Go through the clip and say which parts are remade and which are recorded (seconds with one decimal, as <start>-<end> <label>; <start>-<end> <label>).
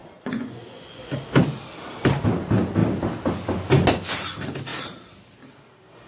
0.0-1.0 remade; 1.0-6.1 recorded